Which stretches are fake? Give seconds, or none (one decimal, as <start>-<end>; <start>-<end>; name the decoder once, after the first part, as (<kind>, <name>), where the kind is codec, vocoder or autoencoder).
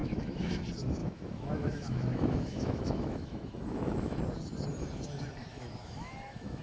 0.0-0.6 (autoencoder, DAC-VAE); 1.0-4.2; 5.5-6.6